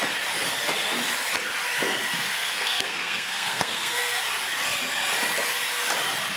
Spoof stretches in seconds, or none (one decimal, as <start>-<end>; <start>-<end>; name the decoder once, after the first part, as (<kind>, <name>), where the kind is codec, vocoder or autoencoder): 2.3-4.2 (codec, SNAC)